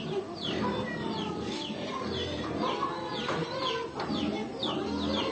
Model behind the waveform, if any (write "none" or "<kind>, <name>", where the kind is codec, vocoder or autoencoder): none